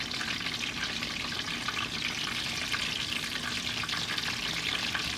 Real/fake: real